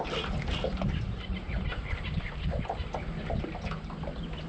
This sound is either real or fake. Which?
real